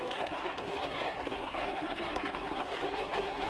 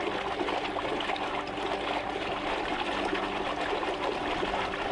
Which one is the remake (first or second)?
first